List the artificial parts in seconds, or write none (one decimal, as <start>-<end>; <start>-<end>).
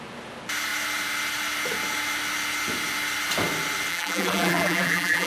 3.9-5.3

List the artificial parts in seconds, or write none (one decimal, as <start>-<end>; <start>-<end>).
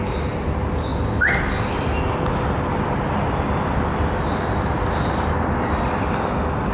none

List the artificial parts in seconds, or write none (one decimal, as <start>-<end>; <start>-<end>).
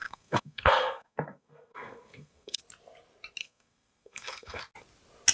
0.0-2.6; 3.4-4.6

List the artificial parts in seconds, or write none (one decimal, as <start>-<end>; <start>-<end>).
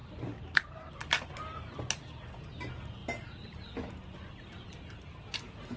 none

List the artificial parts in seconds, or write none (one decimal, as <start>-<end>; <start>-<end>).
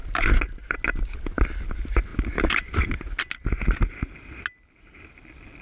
none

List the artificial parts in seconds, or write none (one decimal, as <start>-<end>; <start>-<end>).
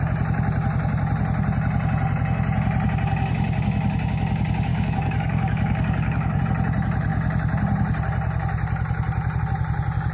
4.7-6.4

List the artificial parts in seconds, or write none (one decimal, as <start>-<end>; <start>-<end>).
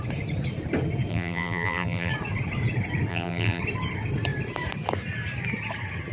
1.1-2.1; 3.1-3.6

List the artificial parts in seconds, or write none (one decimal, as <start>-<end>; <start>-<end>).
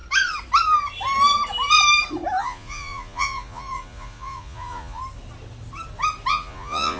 2.4-5.0; 6.3-7.0